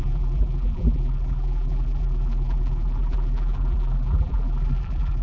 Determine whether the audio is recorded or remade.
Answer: remade